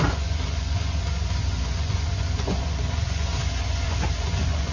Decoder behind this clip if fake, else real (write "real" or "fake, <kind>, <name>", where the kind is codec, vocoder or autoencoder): fake, vocoder, Vocos